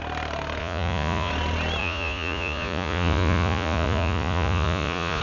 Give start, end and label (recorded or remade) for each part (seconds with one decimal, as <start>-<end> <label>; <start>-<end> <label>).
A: 0.0-0.6 recorded; 0.6-1.3 remade; 1.3-1.8 recorded; 1.8-5.2 remade